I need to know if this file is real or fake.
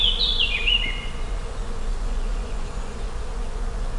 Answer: fake